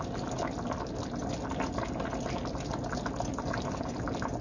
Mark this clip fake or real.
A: real